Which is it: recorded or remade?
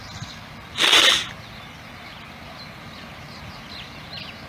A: remade